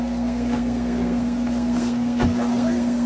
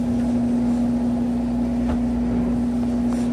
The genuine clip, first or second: second